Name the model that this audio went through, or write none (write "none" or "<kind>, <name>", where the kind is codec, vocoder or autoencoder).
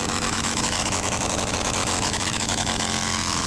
autoencoder, DAC-VAE